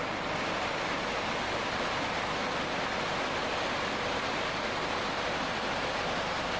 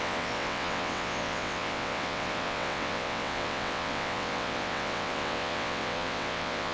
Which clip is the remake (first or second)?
second